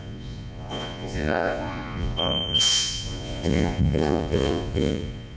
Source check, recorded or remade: remade